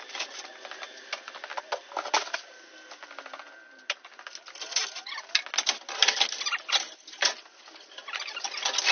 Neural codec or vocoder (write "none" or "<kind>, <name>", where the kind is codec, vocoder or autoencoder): none